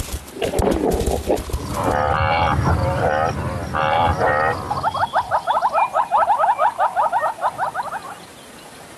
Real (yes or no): yes